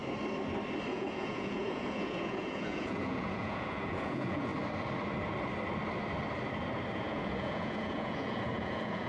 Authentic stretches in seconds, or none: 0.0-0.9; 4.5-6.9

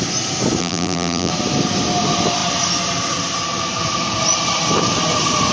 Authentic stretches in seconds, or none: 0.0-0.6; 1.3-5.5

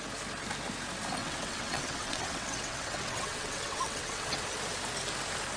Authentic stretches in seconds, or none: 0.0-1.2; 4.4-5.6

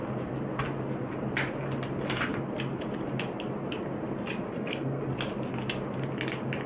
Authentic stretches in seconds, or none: 0.0-4.5; 5.0-6.7

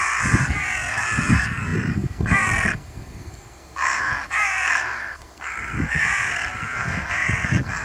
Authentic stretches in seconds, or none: none

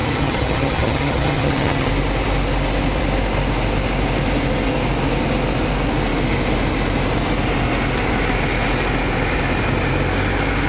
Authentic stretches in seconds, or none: 1.9-10.7

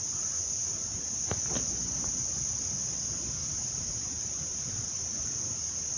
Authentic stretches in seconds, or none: 0.0-3.4